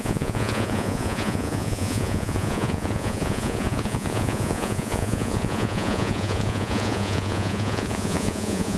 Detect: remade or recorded remade